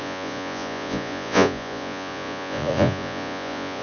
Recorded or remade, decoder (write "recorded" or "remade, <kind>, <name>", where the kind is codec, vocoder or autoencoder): remade, vocoder, Vocos